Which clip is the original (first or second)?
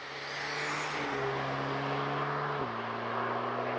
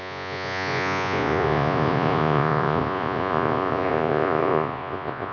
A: first